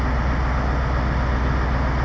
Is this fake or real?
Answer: real